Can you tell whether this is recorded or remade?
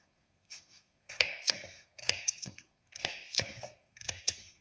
remade